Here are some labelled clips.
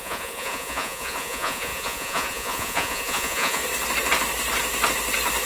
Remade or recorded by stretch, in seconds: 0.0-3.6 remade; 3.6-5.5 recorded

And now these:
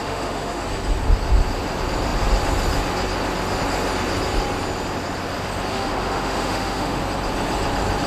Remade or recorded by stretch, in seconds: 0.0-0.6 remade; 0.6-5.7 recorded; 5.7-7.0 remade; 7.0-8.1 recorded

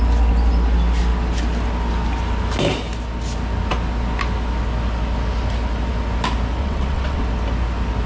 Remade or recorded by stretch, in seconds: 0.0-6.6 recorded; 6.6-7.2 remade; 7.2-8.1 recorded

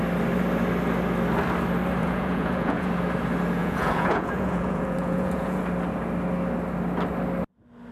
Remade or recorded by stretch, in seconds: 0.0-2.0 recorded; 2.0-2.9 remade; 2.9-3.6 recorded; 3.6-5.6 remade; 5.6-7.9 recorded

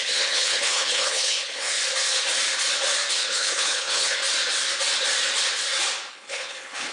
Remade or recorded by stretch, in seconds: 0.0-1.8 remade; 1.8-3.1 recorded; 3.1-4.2 remade; 4.2-6.1 recorded; 6.1-6.9 remade

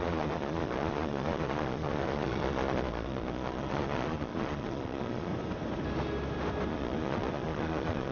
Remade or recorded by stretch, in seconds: 0.0-5.3 remade; 5.3-6.7 recorded; 6.7-8.1 remade